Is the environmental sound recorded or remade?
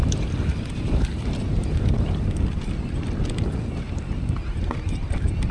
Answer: recorded